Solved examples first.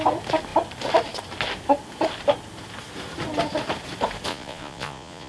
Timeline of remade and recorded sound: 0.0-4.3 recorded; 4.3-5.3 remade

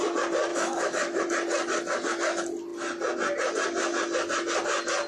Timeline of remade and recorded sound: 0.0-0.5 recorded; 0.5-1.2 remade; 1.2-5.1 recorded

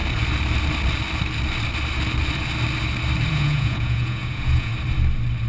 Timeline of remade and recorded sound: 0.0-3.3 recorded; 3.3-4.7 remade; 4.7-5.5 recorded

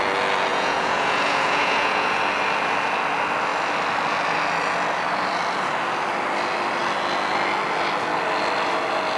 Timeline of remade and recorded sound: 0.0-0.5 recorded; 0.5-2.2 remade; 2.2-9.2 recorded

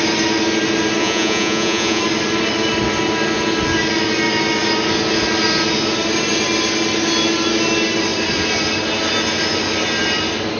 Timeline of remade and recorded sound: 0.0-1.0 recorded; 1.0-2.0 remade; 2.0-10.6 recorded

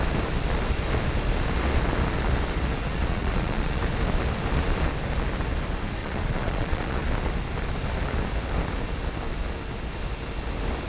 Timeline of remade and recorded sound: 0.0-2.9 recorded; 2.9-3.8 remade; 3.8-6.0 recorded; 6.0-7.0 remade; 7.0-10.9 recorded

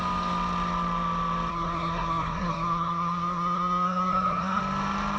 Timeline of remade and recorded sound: 0.0-1.5 recorded; 1.5-4.6 remade; 4.6-5.2 recorded